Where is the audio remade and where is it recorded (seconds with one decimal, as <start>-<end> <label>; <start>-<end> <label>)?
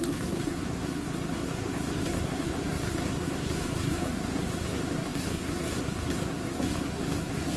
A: 0.0-7.6 remade